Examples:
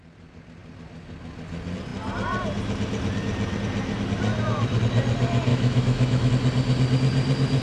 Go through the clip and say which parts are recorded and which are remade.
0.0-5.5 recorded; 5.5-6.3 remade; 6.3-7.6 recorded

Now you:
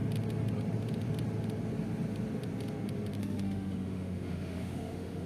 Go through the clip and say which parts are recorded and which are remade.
0.0-3.2 recorded; 3.2-5.3 remade

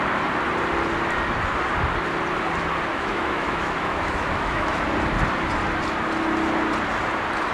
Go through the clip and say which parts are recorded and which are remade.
0.0-2.9 recorded; 2.9-4.8 remade; 4.8-7.5 recorded

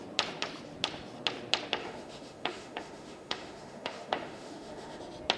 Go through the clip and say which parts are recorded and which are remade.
0.0-1.8 recorded; 1.8-5.0 remade; 5.0-5.4 recorded

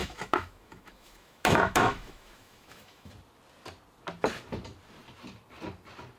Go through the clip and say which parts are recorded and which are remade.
0.0-3.1 remade; 3.1-6.2 recorded

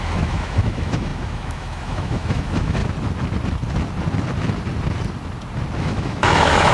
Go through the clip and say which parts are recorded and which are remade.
0.0-2.8 remade; 2.8-5.8 recorded; 5.8-6.7 remade

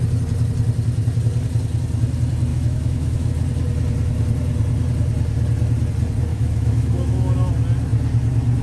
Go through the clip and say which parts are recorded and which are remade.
0.0-2.5 recorded; 2.5-3.3 remade; 3.3-6.3 recorded; 6.3-7.5 remade; 7.5-8.6 recorded

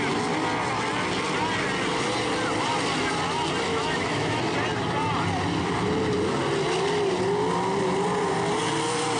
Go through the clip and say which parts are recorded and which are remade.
0.0-3.7 recorded; 3.7-4.4 remade; 4.4-9.2 recorded